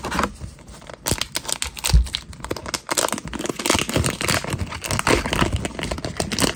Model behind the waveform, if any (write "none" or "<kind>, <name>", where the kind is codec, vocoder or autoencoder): none